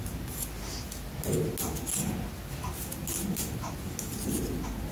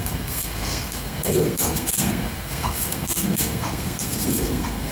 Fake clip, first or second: second